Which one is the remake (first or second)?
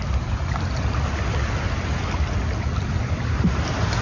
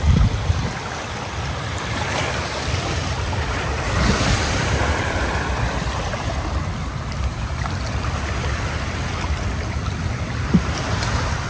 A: second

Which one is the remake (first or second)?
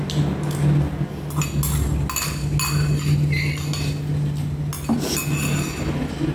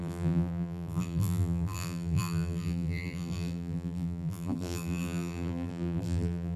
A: second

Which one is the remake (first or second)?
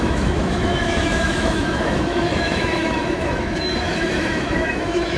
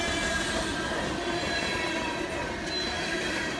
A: first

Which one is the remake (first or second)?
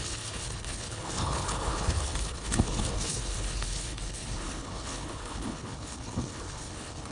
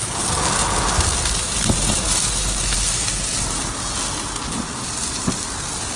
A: first